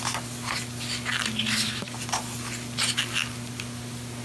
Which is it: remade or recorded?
recorded